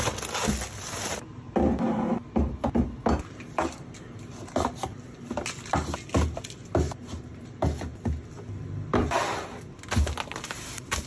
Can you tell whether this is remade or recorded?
recorded